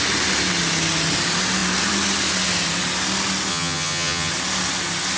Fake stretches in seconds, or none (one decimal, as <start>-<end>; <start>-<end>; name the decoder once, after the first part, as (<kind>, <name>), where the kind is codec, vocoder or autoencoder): 3.5-4.3 (vocoder, HiFi-GAN)